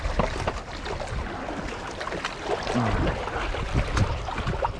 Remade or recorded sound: recorded